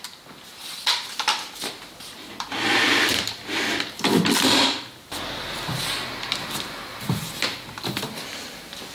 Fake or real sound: fake